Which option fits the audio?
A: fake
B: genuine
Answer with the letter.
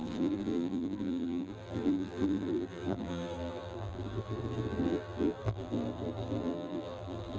A